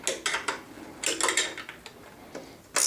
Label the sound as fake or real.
real